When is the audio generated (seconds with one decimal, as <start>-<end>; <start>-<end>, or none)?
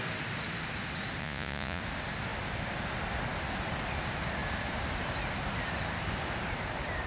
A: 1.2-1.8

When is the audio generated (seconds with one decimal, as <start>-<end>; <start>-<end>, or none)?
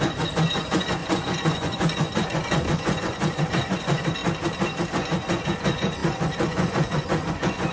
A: 0.0-4.2; 4.9-7.7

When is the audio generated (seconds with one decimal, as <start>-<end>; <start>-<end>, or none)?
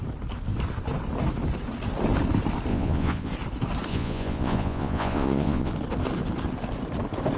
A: 2.7-3.3; 3.9-5.7